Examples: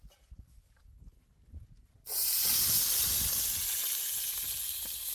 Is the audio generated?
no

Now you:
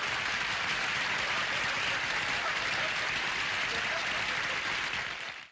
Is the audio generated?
no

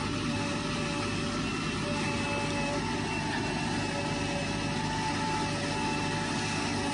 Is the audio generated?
no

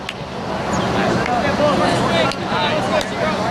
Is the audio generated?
no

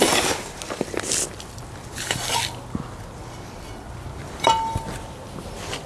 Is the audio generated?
no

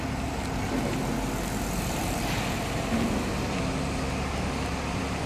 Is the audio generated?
no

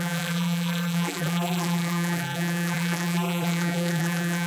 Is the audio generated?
yes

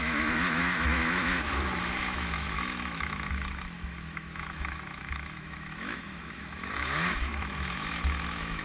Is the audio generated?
yes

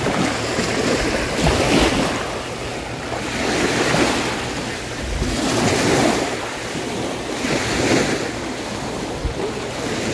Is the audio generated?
no